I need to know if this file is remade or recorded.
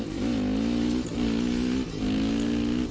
recorded